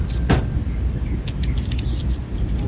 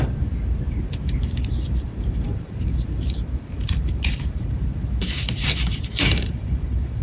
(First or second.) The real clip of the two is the first